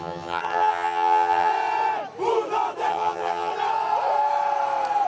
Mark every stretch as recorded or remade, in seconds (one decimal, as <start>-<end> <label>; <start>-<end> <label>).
0.0-1.5 remade; 1.5-2.9 recorded; 2.9-3.5 remade; 3.5-5.1 recorded